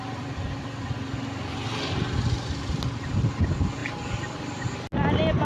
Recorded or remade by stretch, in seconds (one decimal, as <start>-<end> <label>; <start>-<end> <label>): 0.0-3.8 recorded; 3.8-4.4 remade; 4.4-5.4 recorded